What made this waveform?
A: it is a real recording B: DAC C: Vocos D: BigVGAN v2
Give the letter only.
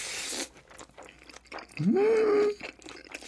A